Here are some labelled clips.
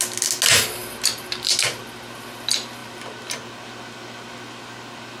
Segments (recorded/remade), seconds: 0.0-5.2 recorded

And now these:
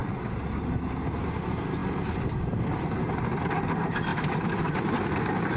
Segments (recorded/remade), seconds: 0.0-1.2 remade; 1.2-1.8 recorded; 1.8-2.4 remade; 2.4-4.1 recorded; 4.1-4.9 remade; 4.9-5.6 recorded

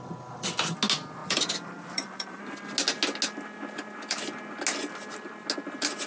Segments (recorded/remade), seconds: 0.0-1.2 recorded; 1.2-2.4 remade; 2.4-6.1 recorded

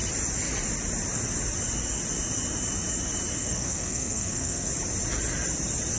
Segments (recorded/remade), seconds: 0.0-3.4 recorded; 3.4-4.7 remade; 4.7-6.0 recorded

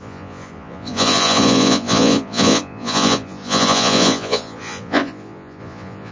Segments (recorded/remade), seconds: 0.0-6.1 remade

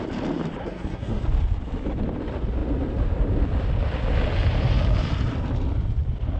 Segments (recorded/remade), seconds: 0.0-0.6 recorded; 0.6-1.2 remade; 1.2-6.4 recorded

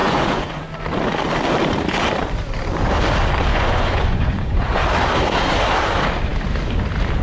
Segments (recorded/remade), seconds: 0.0-0.6 remade; 0.6-3.5 recorded; 3.5-4.8 remade; 4.8-7.2 recorded